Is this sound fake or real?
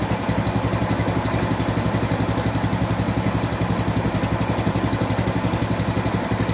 real